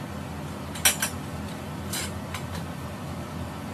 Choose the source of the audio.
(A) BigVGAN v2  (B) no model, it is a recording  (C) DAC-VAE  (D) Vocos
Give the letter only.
B